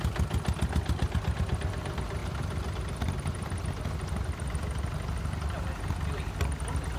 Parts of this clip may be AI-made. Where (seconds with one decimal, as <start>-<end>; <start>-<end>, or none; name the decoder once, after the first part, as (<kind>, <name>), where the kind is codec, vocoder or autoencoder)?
none

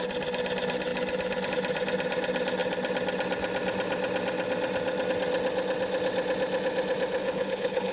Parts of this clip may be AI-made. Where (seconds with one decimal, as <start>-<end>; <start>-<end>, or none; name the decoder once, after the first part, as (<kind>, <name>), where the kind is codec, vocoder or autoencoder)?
7.2-7.9 (codec, HILCodec)

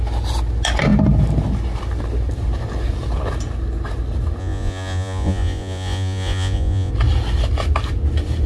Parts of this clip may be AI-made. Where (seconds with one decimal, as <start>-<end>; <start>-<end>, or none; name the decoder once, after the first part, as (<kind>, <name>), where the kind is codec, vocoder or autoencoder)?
4.4-6.9 (vocoder, Vocos)